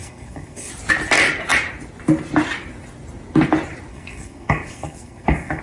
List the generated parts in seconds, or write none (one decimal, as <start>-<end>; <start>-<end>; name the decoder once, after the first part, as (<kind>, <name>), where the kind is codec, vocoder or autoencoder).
0.0-0.7 (codec, SNAC); 3.9-5.6